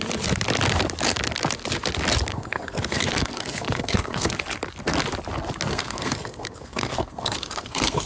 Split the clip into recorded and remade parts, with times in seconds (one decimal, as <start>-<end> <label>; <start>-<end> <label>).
0.0-2.3 recorded; 2.3-4.3 remade; 4.3-5.7 recorded; 5.7-8.1 remade